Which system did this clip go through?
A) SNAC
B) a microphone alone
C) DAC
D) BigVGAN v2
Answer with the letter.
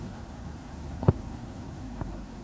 A